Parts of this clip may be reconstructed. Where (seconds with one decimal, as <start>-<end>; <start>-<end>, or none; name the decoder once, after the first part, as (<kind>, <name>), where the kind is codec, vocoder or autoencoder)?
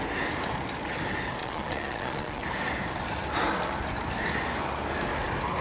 1.4-2.4 (vocoder, Vocos)